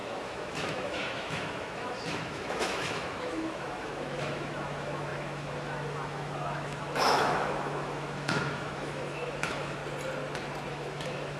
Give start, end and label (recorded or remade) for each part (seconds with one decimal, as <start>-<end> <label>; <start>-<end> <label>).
0.0-9.8 remade; 9.8-10.7 recorded; 10.7-11.4 remade